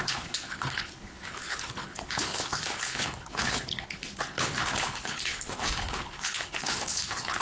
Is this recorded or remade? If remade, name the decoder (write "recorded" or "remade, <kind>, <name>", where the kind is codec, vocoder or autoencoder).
remade, codec, HILCodec